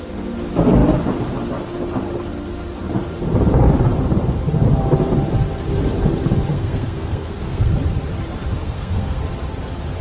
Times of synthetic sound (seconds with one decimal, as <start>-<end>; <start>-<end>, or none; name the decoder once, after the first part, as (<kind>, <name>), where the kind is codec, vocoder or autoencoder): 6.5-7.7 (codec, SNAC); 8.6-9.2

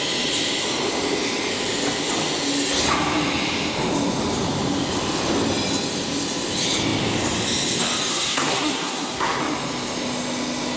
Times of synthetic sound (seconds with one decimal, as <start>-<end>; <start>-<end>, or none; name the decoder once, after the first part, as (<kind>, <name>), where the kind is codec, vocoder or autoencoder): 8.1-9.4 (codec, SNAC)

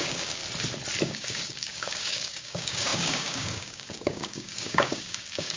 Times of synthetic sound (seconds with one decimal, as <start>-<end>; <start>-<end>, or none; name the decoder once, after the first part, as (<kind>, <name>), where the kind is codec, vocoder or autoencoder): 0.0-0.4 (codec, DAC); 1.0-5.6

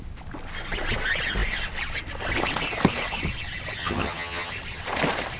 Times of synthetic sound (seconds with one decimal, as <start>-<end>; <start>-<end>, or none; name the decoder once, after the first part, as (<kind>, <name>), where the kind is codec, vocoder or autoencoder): 3.8-4.5 (vocoder, HiFi-GAN)